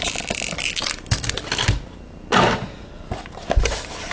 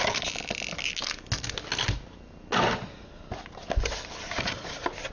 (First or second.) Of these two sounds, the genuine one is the second